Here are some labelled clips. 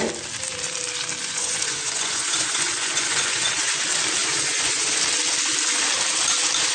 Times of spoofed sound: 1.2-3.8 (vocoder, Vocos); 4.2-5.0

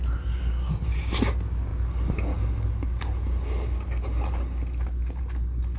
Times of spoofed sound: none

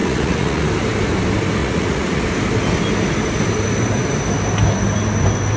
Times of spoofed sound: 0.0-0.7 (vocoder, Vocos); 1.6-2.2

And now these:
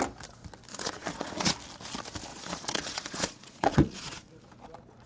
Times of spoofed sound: 0.7-1.5 (vocoder, Vocos); 2.3-4.3

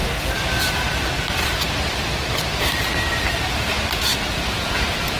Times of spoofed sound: 4.1-5.2 (vocoder, Vocos)

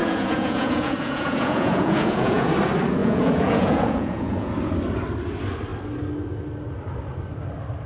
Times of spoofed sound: 0.0-2.5 (vocoder, Vocos); 3.0-4.5